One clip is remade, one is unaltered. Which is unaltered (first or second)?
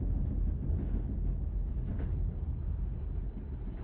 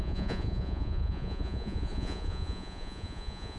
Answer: first